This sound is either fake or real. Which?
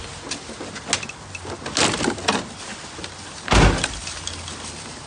real